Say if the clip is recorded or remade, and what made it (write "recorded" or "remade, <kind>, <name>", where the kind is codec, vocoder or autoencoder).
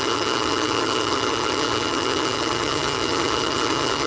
remade, vocoder, HiFi-GAN